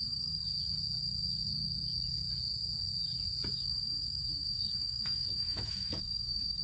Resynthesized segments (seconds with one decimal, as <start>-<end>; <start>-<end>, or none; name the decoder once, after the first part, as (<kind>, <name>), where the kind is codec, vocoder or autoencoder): 0.0-0.4 (autoencoder, DAC-VAE); 3.5-6.6

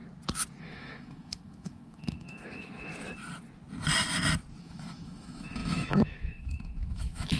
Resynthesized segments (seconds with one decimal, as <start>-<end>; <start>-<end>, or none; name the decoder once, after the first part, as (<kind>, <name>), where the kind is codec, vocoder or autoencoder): 0.6-2.9 (autoencoder, DAC-VAE); 4.6-7.4

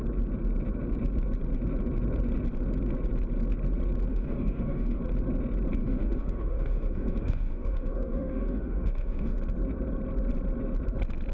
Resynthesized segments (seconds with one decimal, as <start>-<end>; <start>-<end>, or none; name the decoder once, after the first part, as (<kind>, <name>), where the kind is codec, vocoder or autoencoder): 4.1-5.0 (autoencoder, DAC-VAE); 5.8-9.4

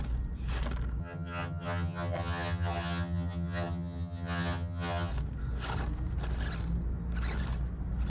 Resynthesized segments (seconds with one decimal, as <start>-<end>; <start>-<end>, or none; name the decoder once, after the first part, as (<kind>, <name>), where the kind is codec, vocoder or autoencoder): 1.0-5.1 (vocoder, HiFi-GAN)

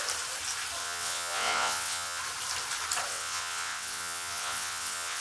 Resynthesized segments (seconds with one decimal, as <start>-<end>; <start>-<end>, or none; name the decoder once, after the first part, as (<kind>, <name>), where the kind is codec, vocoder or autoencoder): 0.8-2.2 (vocoder, WaveNeXt); 3.1-5.2